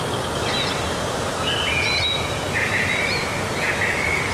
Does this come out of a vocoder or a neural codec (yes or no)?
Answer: no